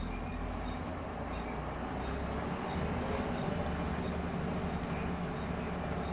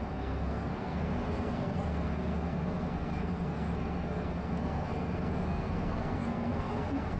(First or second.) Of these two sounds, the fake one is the second